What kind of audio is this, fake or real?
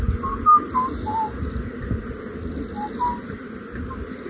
real